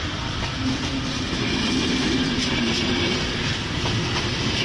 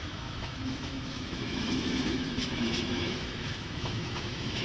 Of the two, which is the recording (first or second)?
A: first